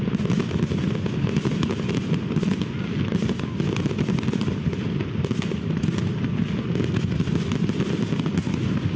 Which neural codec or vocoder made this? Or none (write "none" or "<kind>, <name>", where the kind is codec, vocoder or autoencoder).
none